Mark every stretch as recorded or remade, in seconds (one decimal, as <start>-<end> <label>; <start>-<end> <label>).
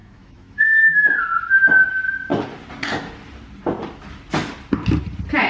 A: 0.0-1.2 remade; 1.2-5.5 recorded